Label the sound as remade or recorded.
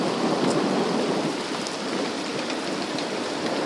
recorded